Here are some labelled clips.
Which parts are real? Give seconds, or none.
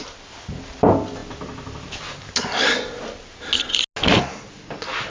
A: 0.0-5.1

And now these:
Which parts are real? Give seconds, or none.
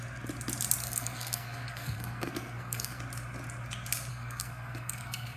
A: 0.0-0.8; 3.0-4.1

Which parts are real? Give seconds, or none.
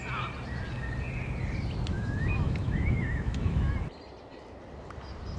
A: 0.0-1.9; 3.7-5.4